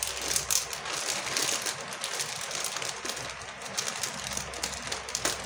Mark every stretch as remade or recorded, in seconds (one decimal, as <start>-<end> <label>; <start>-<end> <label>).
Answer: 0.0-5.5 recorded